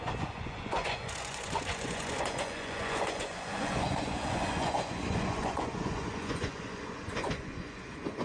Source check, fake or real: fake